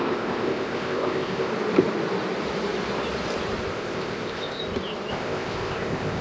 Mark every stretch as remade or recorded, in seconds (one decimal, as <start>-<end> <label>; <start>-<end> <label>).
0.0-1.5 remade; 1.5-3.7 recorded; 3.7-4.6 remade; 4.6-5.1 recorded; 5.1-6.2 remade

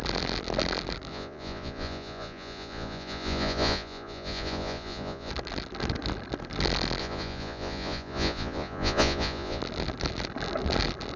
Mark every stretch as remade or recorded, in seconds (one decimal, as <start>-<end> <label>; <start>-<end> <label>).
0.0-1.1 recorded; 1.1-5.3 remade; 5.3-7.0 recorded; 7.0-9.6 remade; 9.6-11.2 recorded

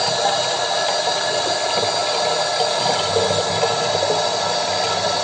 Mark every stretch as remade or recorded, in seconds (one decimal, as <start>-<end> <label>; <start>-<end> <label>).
0.0-5.2 recorded